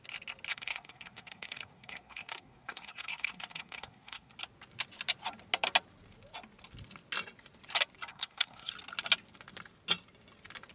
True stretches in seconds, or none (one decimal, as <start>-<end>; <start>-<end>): 0.0-0.5; 4.3-8.1; 8.7-10.7